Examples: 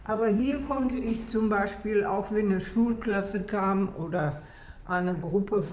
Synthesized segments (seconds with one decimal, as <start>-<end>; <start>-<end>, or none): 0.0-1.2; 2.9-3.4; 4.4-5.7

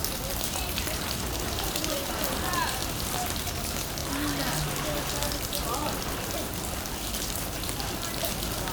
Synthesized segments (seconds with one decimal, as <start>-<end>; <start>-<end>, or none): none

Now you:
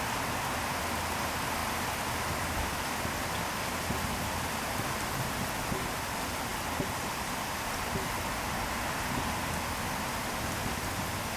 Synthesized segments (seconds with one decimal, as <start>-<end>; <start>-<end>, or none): none

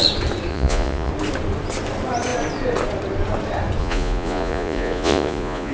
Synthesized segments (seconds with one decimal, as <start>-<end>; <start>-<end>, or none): 0.5-1.1; 3.8-5.7

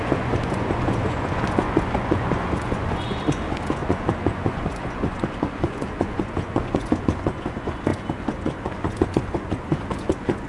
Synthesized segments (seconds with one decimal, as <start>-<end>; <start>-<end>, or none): 0.0-10.5